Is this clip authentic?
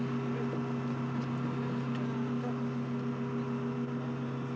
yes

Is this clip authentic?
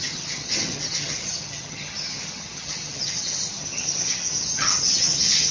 no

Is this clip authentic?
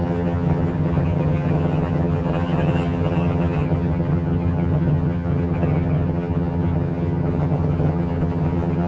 no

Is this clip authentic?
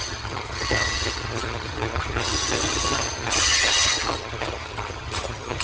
no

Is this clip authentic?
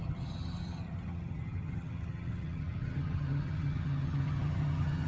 no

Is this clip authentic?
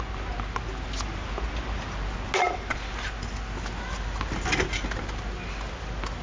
yes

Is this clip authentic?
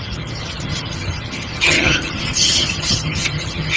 no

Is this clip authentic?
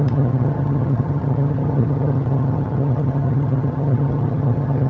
no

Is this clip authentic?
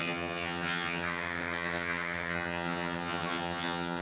no